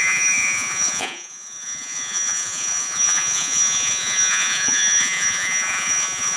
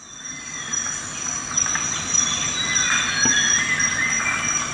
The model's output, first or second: first